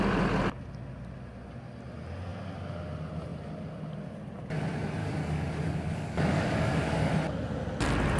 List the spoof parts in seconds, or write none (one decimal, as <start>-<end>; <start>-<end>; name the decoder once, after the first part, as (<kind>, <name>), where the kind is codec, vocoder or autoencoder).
5.0-7.1 (codec, DAC)

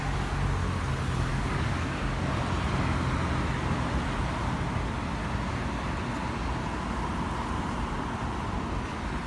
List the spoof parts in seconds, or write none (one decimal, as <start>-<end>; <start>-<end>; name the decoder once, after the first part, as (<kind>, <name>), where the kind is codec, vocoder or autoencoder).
1.3-2.3 (codec, DAC)

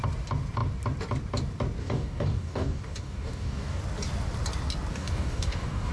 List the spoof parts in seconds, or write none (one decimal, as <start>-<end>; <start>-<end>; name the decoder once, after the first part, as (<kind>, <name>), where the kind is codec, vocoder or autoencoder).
1.8-3.8 (codec, DAC); 4.9-5.9

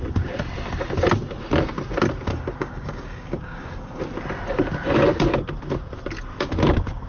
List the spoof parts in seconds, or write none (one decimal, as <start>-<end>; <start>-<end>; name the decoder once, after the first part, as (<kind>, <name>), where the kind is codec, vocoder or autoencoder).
2.3-4.0 (codec, DAC)

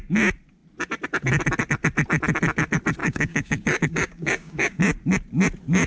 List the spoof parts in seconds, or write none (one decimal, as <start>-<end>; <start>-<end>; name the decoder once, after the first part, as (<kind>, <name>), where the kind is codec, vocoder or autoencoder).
3.0-4.8 (codec, DAC)

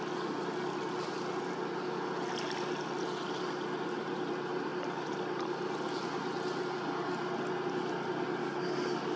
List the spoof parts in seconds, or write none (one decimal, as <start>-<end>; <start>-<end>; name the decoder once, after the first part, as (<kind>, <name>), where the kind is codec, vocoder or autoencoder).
8.4-9.2 (codec, DAC)

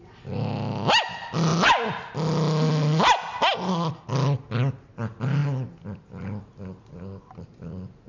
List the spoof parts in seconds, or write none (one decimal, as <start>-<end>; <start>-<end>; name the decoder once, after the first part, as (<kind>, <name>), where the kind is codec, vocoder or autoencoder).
none